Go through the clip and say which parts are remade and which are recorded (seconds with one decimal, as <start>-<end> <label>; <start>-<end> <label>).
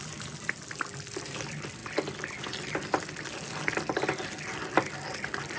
0.0-5.6 recorded